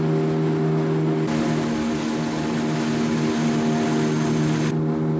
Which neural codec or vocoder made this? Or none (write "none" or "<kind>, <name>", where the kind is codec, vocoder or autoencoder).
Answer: none